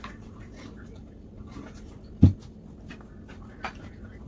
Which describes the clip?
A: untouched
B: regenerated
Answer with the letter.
A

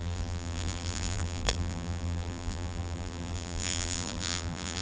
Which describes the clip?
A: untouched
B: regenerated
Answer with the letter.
B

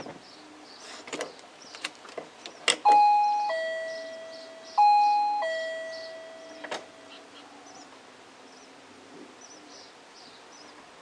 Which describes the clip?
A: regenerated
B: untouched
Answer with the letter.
B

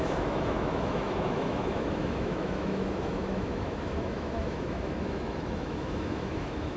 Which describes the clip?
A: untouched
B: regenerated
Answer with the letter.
B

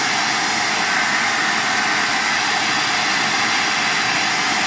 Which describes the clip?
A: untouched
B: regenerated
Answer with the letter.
A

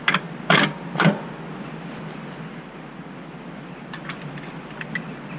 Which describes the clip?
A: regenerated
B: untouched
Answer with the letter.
B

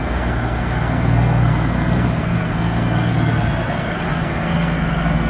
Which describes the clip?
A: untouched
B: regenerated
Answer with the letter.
B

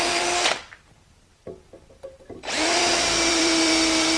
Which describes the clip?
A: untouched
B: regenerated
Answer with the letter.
B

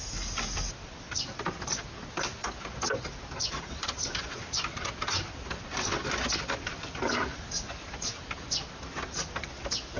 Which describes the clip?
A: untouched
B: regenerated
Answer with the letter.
A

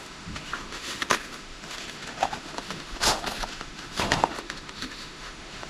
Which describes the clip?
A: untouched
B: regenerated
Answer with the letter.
B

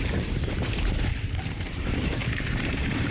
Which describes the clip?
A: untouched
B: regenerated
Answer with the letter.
B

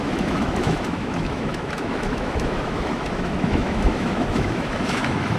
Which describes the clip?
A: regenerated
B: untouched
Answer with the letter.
A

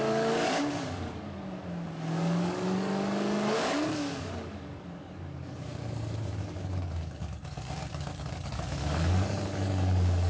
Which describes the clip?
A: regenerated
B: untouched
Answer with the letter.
A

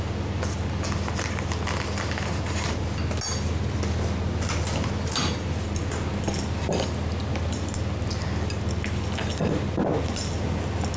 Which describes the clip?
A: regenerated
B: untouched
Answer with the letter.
B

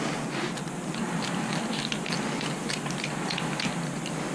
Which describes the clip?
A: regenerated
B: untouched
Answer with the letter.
B